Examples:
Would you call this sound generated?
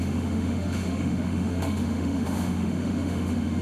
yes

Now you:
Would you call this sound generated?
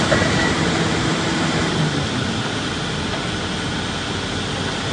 no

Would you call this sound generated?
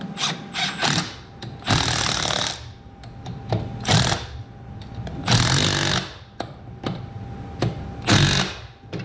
no